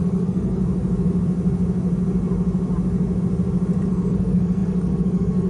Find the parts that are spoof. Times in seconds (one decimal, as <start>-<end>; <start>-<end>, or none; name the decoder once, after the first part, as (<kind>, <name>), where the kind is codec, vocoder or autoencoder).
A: 0.0-0.6 (codec, SNAC); 3.9-5.5

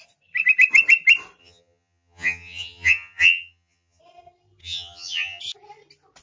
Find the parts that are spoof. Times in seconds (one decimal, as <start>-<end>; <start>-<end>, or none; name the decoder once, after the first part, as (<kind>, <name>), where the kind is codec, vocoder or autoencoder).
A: 1.4-4.0 (vocoder, HiFi-GAN); 4.6-5.4

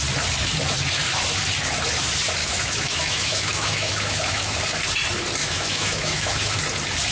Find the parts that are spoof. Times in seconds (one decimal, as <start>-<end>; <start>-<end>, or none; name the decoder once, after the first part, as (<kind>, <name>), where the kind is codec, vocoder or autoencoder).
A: 2.4-4.6 (autoencoder, DAC-VAE); 5.4-6.6

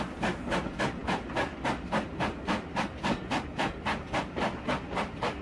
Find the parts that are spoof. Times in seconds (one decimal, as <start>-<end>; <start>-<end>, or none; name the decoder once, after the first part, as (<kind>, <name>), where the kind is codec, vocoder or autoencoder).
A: none

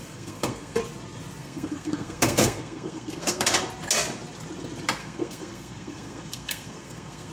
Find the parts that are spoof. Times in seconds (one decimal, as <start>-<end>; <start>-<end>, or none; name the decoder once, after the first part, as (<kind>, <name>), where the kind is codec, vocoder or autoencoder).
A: 0.0-0.8 (codec, SNAC); 1.4-3.5; 5.0-7.3

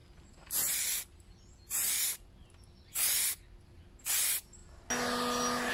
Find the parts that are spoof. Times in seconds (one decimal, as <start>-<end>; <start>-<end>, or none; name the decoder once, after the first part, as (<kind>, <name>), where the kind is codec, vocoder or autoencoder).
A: none

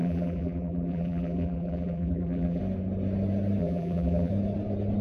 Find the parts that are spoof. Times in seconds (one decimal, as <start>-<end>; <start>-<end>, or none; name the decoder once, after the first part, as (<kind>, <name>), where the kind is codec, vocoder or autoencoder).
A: 0.0-2.6 (vocoder, BigVGAN v2); 3.6-4.3

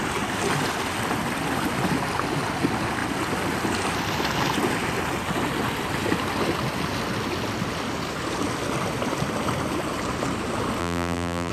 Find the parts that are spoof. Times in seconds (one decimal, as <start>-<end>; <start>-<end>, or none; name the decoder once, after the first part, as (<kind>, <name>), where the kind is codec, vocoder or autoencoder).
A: 10.8-11.5 (vocoder, BigVGAN v2)